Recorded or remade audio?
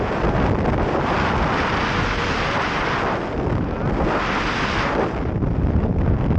recorded